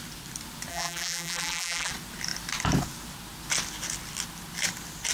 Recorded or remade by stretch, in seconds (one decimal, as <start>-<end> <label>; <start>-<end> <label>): 0.0-0.7 recorded; 0.7-1.9 remade; 1.9-5.1 recorded